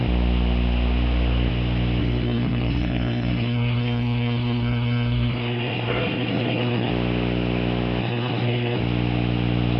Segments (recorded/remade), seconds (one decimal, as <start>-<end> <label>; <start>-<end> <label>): 0.0-2.0 recorded; 2.0-6.9 remade; 6.9-8.0 recorded; 8.0-8.8 remade; 8.8-9.8 recorded